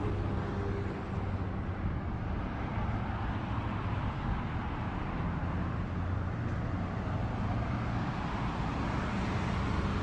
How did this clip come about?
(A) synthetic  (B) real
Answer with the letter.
B